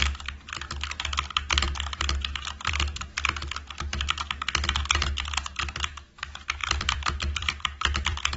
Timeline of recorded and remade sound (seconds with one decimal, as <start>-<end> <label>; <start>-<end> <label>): 0.0-6.6 recorded; 6.6-8.4 remade